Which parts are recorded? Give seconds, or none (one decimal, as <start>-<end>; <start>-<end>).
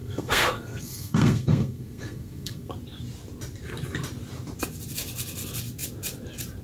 2.7-6.6